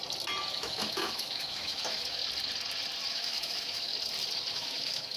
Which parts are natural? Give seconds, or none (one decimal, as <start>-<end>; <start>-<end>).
0.0-0.5; 2.2-3.1; 3.9-4.5